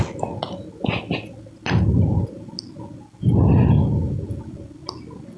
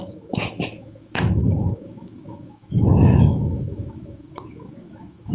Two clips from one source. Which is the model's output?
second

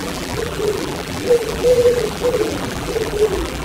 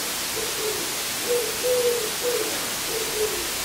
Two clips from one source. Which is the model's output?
first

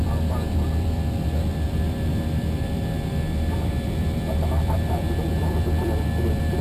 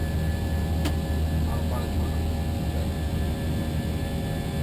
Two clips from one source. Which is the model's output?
first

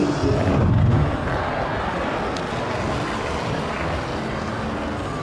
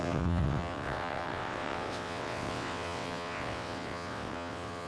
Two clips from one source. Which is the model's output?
second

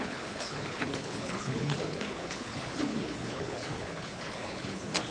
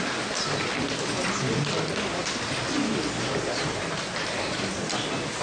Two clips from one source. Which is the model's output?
first